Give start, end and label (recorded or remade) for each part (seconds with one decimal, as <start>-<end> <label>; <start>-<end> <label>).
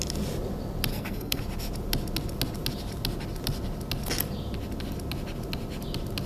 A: 0.0-0.9 recorded; 0.9-1.4 remade; 1.4-6.3 recorded